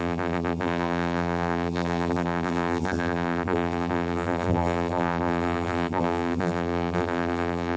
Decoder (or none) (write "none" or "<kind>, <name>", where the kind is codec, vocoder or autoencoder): vocoder, BigVGAN v2